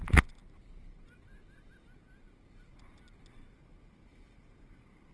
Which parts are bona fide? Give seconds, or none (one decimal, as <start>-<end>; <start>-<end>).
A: 0.0-5.1